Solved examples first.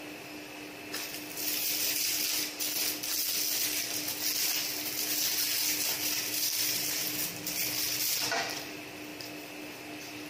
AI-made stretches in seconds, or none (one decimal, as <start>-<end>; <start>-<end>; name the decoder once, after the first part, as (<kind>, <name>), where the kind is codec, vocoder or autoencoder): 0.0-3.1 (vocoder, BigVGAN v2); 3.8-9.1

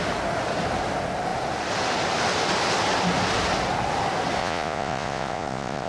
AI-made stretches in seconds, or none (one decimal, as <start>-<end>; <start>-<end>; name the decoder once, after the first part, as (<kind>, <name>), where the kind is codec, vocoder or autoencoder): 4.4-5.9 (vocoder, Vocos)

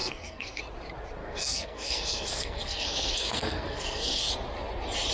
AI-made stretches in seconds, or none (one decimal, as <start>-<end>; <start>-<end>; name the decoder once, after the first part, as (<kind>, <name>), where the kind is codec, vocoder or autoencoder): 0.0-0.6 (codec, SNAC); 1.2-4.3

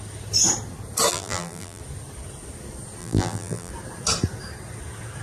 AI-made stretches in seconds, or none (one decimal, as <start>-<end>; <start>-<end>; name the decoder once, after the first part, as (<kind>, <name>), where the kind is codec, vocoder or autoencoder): 1.1-1.8 (vocoder, BigVGAN v2); 3.0-3.7

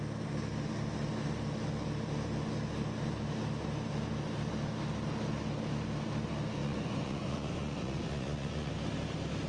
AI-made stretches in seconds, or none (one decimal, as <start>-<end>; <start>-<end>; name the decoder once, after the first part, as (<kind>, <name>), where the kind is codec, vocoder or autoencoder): 6.6-8.7 (vocoder, Vocos)